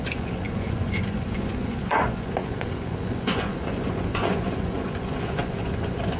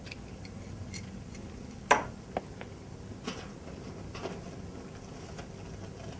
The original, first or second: second